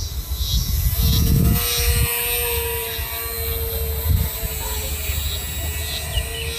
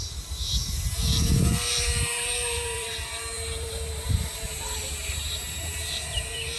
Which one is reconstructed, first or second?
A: second